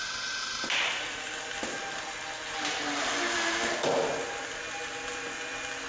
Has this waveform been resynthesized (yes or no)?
no